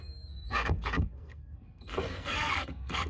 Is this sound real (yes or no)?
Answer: no